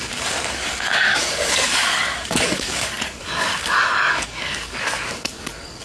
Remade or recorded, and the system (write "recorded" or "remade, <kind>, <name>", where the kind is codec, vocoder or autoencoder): remade, codec, DAC